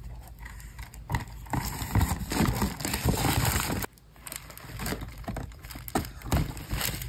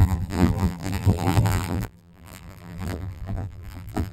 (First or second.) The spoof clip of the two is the second